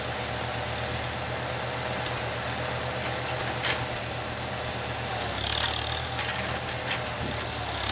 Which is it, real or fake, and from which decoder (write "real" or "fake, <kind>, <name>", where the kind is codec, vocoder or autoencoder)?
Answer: real